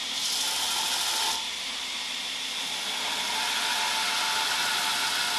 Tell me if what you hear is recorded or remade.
recorded